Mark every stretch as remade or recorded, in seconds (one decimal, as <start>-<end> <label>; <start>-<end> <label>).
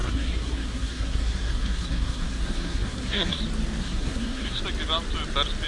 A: 0.0-3.4 remade; 3.4-3.8 recorded; 3.8-4.6 remade; 4.6-5.7 recorded